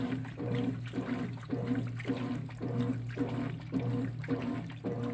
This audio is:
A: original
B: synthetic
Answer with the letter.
A